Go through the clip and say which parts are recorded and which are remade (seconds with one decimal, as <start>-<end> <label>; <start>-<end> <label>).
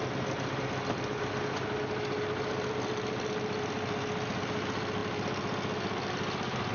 0.0-6.7 recorded